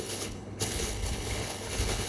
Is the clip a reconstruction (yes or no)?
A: yes